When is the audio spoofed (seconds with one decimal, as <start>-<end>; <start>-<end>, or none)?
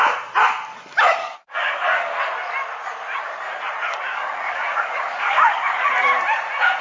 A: 1.2-2.2; 4.1-5.9